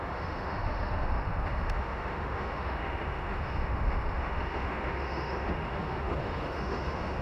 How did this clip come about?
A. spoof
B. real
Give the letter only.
A